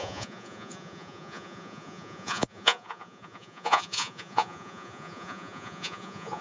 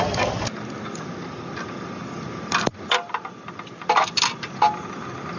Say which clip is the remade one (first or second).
first